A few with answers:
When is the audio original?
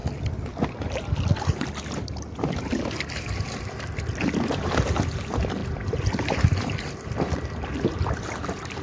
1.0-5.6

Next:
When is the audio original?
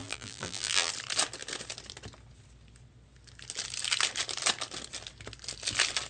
0.9-6.1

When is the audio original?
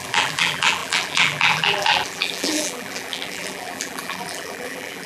none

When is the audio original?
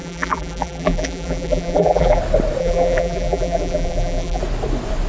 2.2-2.6; 4.4-5.1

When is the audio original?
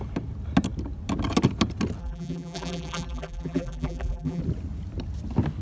0.0-2.0; 4.4-5.6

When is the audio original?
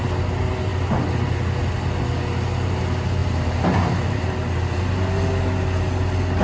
0.0-3.2; 4.8-6.4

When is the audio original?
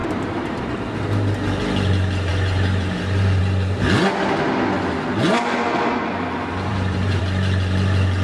0.8-2.3; 3.4-6.7; 7.2-8.2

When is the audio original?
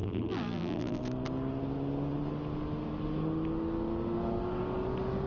1.0-5.3